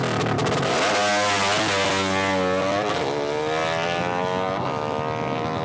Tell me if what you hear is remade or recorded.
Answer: recorded